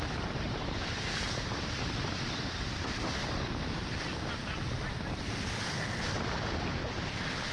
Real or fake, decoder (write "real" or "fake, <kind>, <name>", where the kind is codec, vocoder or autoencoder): real